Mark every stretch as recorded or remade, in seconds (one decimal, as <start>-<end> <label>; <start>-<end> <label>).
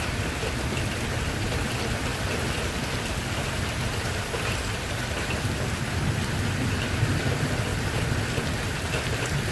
0.0-9.5 recorded